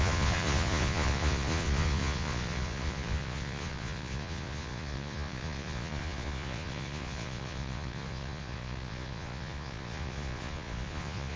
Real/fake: fake